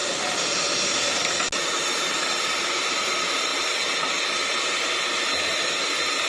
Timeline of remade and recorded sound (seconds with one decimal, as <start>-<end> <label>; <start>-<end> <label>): 0.0-2.4 recorded; 2.4-3.5 remade; 3.5-5.4 recorded; 5.4-6.3 remade

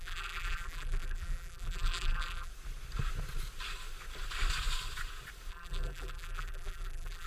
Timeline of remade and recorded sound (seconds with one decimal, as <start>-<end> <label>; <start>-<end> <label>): 0.0-2.5 remade; 2.5-5.5 recorded; 5.5-7.3 remade

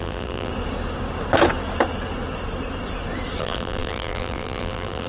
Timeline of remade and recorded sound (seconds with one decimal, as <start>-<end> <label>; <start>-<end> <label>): 0.0-0.5 remade; 0.5-3.4 recorded; 3.4-5.1 remade

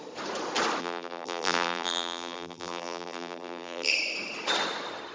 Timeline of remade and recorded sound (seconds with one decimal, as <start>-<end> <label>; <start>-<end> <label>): 0.0-0.8 recorded; 0.8-3.9 remade; 3.9-5.1 recorded

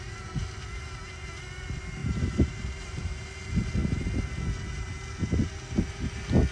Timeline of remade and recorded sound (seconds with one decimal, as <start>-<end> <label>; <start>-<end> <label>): 0.0-2.0 recorded; 2.0-3.3 remade; 3.3-6.5 recorded

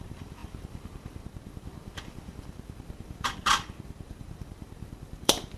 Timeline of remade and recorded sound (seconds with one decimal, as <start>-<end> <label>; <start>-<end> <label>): 0.0-5.6 remade